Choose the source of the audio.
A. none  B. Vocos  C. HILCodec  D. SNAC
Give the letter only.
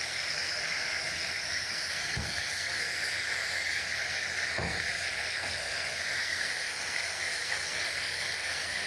D